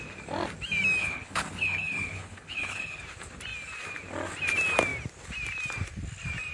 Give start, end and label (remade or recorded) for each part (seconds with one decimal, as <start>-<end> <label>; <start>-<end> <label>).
0.0-1.0 recorded; 1.0-3.0 remade; 3.0-6.5 recorded